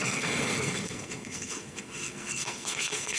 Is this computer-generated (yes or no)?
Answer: yes